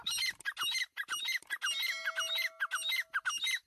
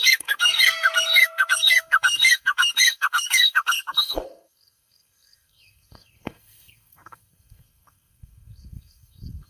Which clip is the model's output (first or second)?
second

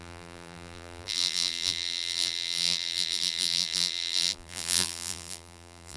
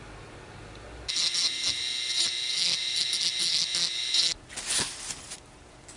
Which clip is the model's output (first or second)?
first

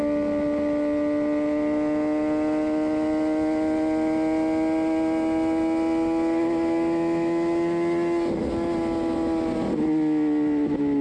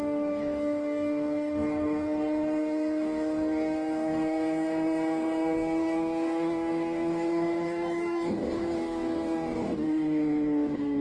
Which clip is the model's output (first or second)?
second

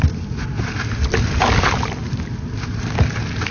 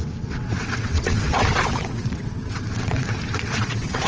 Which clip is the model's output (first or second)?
second